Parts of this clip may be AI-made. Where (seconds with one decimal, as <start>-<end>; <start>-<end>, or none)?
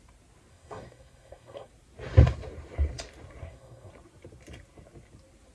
0.5-1.7; 3.4-3.9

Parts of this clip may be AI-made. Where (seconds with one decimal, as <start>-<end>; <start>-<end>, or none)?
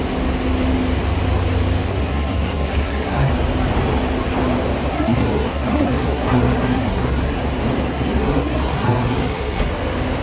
1.9-3.3; 4.9-7.4; 7.9-9.7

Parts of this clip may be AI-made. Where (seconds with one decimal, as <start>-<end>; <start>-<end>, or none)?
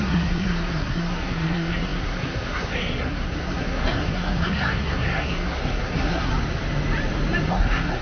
0.0-6.3; 7.5-8.0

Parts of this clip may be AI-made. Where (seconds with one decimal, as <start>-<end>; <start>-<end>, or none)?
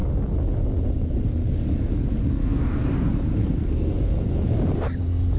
2.4-2.9; 3.4-4.0